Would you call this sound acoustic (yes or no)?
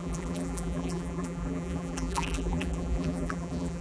no